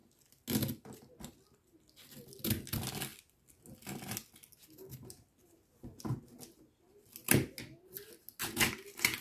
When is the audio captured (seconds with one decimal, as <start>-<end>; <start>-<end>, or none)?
0.0-9.2